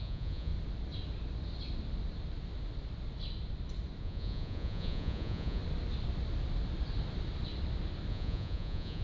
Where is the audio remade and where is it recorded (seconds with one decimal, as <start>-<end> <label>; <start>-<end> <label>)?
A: 0.0-0.5 remade; 0.5-4.0 recorded; 4.0-5.6 remade; 5.6-8.1 recorded; 8.1-9.0 remade